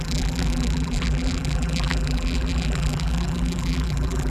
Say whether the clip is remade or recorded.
remade